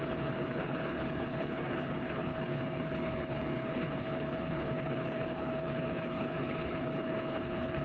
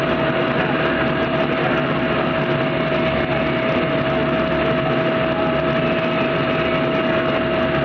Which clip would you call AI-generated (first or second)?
first